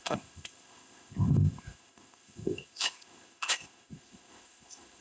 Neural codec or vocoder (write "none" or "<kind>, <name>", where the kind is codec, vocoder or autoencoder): codec, ZipCodec